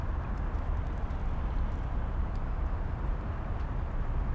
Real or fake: real